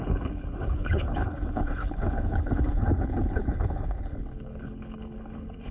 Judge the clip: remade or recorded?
remade